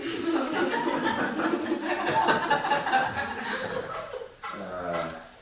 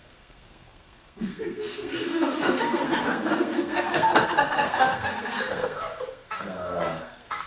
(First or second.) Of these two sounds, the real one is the first